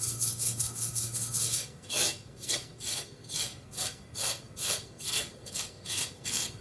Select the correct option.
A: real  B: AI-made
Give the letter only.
B